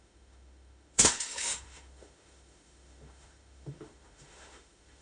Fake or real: fake